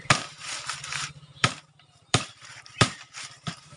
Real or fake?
fake